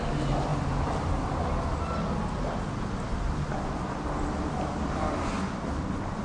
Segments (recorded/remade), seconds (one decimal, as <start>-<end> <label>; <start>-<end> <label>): 0.0-6.2 recorded